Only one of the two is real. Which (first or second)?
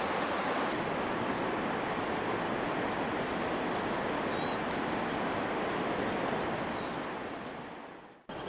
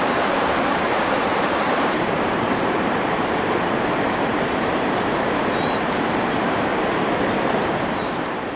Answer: first